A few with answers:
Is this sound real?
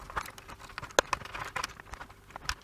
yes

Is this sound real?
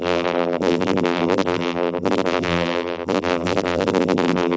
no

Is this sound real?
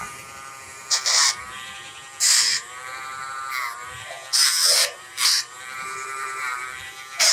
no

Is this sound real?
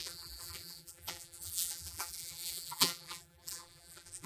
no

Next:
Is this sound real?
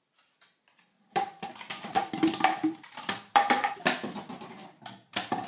no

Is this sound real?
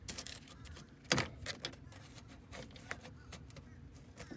yes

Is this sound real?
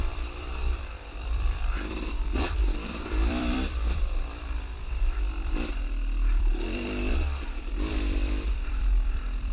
no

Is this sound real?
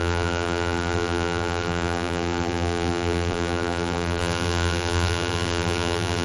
no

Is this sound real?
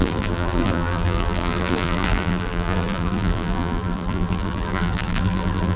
no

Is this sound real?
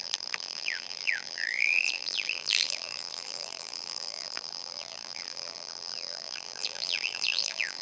no